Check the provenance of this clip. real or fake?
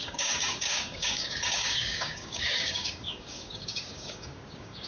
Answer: fake